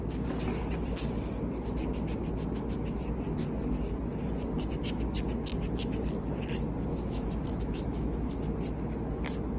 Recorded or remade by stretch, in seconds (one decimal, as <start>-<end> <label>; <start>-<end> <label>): 0.0-6.9 recorded; 6.9-8.3 remade; 8.3-9.6 recorded